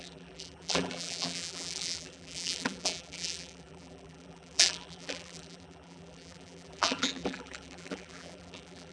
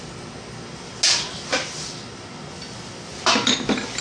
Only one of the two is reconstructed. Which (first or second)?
first